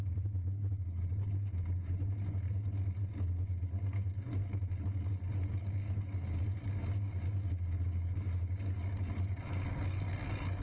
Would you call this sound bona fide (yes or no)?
yes